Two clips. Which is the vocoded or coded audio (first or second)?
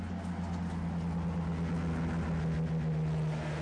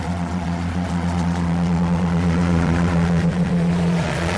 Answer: second